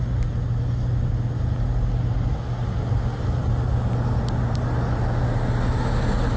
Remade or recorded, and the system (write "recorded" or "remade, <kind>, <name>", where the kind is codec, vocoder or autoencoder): recorded